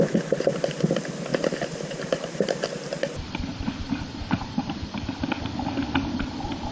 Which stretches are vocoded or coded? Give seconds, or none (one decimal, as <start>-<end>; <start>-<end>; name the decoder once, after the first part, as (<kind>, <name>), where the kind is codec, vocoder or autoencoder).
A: 1.3-5.2 (vocoder, BigVGAN v2)